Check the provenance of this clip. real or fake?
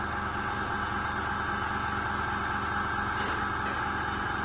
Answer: real